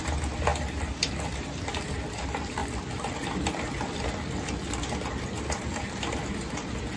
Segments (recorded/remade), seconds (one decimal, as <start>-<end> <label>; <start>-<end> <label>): 0.0-7.0 recorded